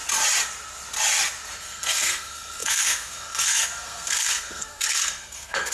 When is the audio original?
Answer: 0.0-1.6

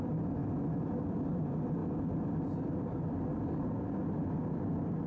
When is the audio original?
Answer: 0.0-5.1